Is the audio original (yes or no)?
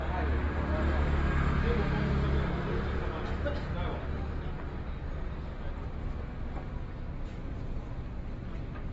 yes